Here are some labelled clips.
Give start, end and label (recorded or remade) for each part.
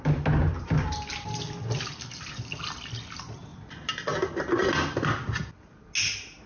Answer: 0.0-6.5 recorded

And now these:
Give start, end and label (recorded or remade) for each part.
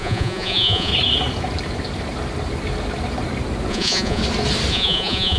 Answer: 0.0-0.9 remade; 0.9-3.7 recorded; 3.7-4.2 remade; 4.2-4.7 recorded; 4.7-5.4 remade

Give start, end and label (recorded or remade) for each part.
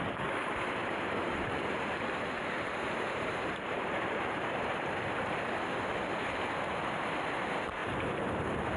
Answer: 0.0-0.8 recorded; 0.8-4.7 remade; 4.7-7.8 recorded; 7.8-8.4 remade; 8.4-8.8 recorded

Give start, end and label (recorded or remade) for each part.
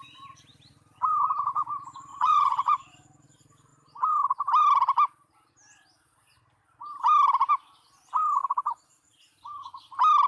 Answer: 0.0-2.1 recorded; 2.1-2.9 remade; 2.9-10.3 recorded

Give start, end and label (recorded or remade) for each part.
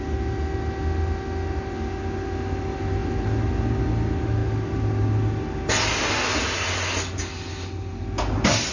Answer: 0.0-8.7 recorded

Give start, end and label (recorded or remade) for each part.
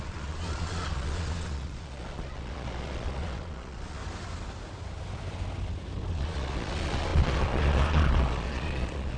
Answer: 0.0-4.0 remade; 4.0-6.1 recorded; 6.1-9.2 remade